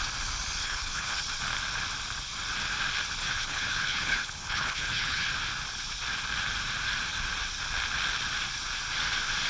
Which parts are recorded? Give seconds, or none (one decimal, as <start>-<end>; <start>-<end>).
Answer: 0.0-0.6; 1.2-3.2; 5.3-9.5